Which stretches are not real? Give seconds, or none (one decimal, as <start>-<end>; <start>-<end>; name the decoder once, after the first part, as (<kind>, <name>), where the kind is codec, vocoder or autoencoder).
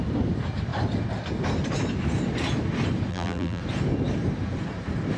3.1-3.6 (vocoder, BigVGAN v2)